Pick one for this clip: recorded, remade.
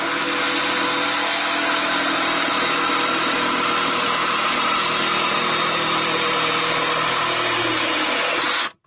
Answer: recorded